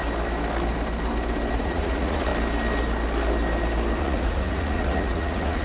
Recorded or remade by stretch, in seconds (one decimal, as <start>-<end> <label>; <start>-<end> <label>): 0.0-1.6 recorded; 1.6-2.3 remade; 2.3-4.0 recorded; 4.0-5.6 remade